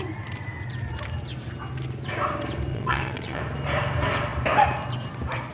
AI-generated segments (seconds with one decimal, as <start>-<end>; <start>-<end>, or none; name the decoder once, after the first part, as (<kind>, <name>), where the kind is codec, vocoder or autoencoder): 2.7-3.4 (vocoder, WaveNeXt)